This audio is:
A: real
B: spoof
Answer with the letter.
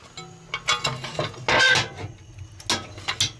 A